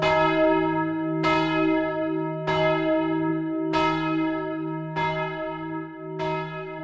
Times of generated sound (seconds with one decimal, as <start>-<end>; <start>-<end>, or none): none